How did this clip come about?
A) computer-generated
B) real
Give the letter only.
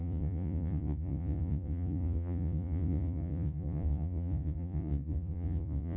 A